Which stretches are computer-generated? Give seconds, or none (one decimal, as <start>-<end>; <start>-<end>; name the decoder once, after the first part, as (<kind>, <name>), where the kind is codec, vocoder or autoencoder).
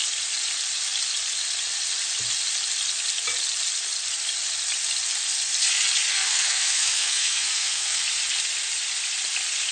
6.1-8.0 (codec, SNAC)